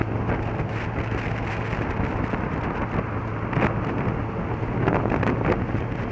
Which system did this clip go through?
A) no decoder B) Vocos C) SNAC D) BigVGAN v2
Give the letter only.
A